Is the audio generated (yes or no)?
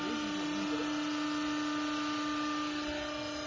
no